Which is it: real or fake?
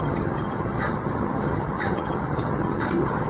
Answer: fake